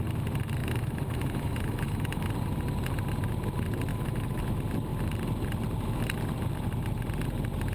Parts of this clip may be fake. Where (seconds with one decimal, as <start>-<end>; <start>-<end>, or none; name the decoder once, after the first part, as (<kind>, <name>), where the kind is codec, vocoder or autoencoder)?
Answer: 0.6-2.3 (autoencoder, DAC-VAE); 3.9-4.4